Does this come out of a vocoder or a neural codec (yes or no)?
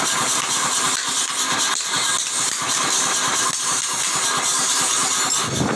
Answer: no